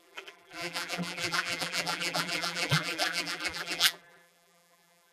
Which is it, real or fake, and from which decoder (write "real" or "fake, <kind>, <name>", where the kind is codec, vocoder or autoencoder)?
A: fake, vocoder, BigVGAN v2